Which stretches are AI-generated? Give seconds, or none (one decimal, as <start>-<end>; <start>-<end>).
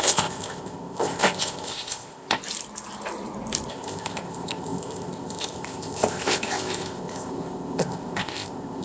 0.0-2.4; 3.7-8.8